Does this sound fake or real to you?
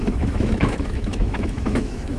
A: fake